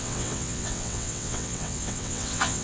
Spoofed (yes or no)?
yes